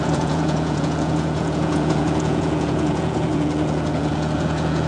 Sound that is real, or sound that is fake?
fake